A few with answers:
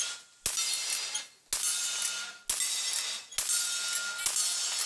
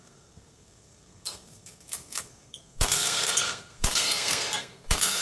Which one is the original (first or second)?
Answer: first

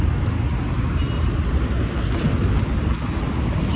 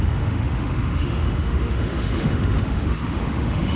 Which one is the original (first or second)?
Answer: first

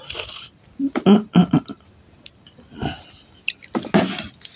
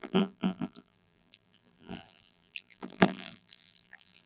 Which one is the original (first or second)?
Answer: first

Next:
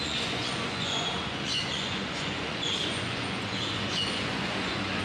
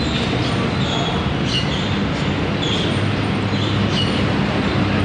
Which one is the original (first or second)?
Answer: second